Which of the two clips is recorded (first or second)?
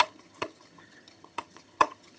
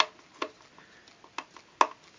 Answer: second